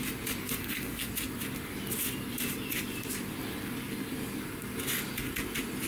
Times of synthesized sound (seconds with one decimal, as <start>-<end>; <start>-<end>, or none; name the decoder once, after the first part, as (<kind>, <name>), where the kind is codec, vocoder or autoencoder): 0.4-1.1 (codec, SNAC)